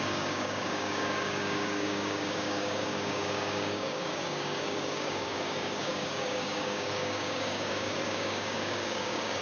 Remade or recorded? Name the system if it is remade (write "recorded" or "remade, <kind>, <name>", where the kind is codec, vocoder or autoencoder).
remade, codec, DAC